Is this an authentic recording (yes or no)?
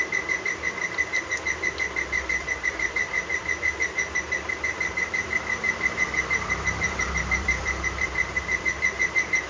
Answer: no